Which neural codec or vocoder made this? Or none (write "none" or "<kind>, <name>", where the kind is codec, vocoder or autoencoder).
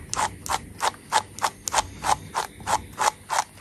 none